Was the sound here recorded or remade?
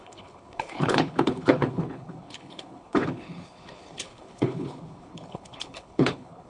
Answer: remade